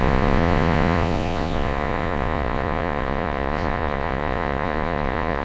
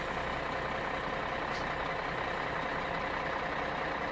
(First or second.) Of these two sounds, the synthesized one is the first